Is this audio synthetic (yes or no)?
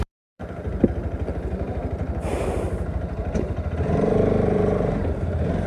yes